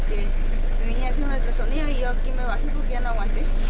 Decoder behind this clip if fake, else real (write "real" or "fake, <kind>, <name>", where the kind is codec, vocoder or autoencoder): real